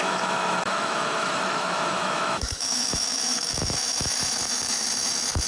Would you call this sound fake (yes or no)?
yes